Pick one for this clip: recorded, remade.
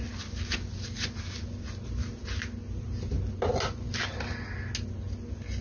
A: recorded